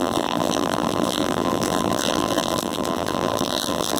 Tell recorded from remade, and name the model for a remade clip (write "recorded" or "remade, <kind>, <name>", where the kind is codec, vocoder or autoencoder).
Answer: remade, vocoder, BigVGAN v2